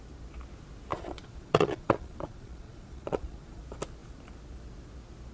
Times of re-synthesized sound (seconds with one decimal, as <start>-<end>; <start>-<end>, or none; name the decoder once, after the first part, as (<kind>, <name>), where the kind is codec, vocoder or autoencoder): 0.9-3.6 (vocoder, Vocos)